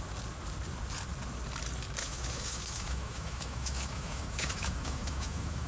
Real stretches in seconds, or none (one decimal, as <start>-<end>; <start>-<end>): 0.0-2.0